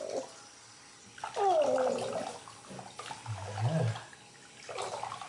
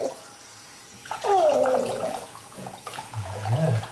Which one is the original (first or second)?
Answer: first